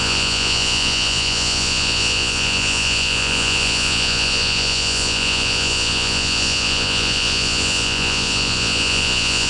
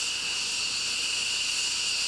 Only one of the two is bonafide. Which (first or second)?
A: second